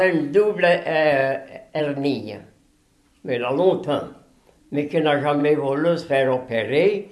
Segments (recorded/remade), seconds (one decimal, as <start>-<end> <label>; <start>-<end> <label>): 0.0-7.1 recorded